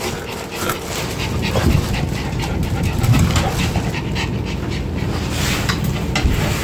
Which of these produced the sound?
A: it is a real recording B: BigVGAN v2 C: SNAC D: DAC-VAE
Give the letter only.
A